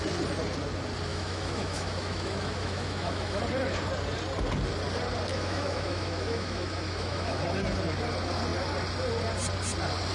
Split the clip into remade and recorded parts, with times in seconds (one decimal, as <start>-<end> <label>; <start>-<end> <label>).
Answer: 0.0-1.1 recorded; 1.1-3.4 remade; 3.4-5.3 recorded; 5.3-7.4 remade; 7.4-10.1 recorded